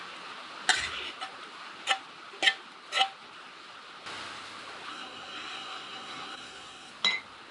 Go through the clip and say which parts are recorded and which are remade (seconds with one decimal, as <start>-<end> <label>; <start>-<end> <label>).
0.0-4.9 recorded; 4.9-6.9 remade; 6.9-7.5 recorded